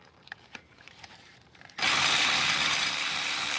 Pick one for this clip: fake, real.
fake